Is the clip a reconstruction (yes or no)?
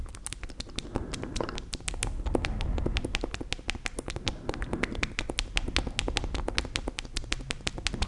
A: no